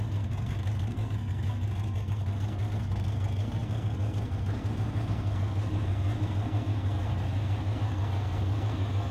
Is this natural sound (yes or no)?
no